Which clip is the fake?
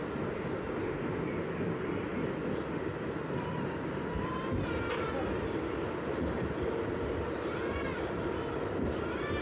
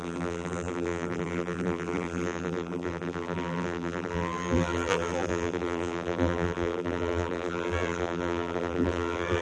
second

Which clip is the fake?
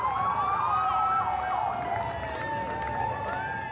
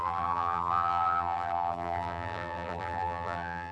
second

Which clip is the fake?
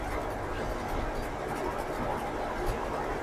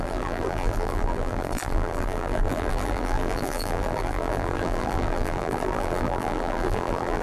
second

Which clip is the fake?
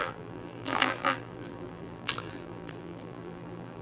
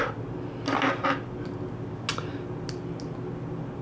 first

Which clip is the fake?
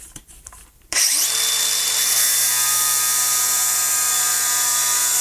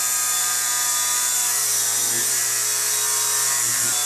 first